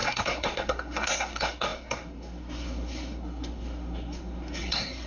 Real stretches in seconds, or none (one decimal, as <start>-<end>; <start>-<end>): none